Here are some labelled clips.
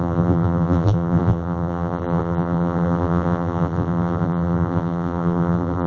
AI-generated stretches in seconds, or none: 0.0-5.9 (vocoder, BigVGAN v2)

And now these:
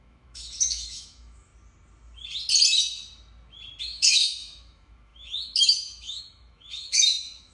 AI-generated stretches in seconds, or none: 0.0-1.5 (autoencoder, DAC-VAE); 3.8-7.5

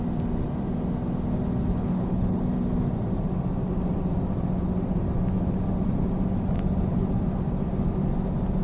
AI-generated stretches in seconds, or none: 1.7-2.4 (codec, HILCodec)

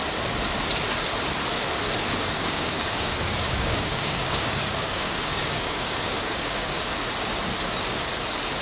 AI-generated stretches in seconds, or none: 2.4-6.8 (codec, DAC)

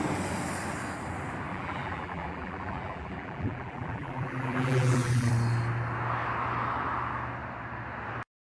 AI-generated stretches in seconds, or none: 1.5-5.3 (vocoder, BigVGAN v2)

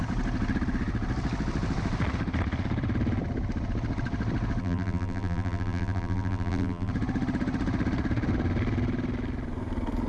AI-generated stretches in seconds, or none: 4.6-6.9 (vocoder, BigVGAN v2)